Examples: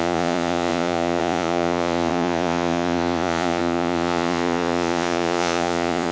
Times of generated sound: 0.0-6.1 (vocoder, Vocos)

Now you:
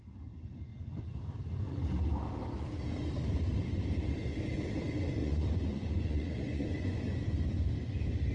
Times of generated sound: 5.2-7.0 (vocoder, Vocos)

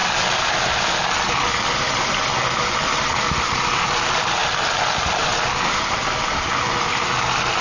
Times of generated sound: none

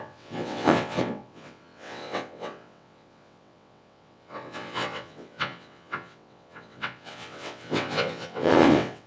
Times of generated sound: 0.0-9.1 (vocoder, WaveNeXt)

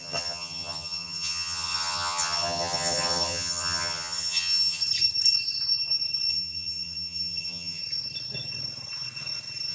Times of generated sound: 0.0-4.8 (vocoder, HiFi-GAN); 6.3-7.8

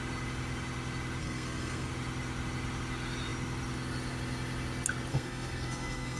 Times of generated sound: 1.2-1.9 (codec, SNAC); 5.1-6.2